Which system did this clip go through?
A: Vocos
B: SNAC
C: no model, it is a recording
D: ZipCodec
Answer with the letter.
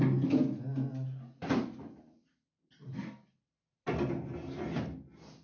C